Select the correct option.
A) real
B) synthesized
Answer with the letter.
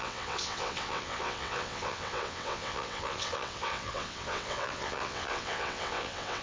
B